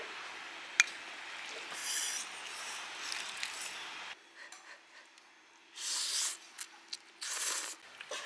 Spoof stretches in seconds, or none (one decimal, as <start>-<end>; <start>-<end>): none